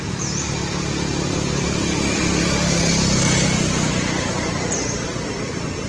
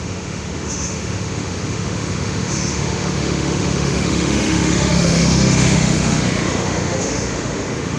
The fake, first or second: second